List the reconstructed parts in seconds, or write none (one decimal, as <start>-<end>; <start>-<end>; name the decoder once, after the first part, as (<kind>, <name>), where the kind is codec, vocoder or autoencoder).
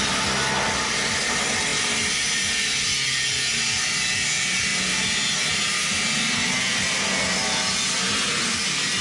none